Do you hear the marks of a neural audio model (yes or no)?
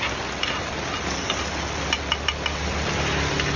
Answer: no